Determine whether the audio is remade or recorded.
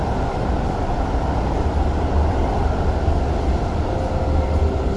recorded